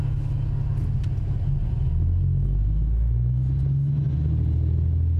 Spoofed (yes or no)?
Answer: no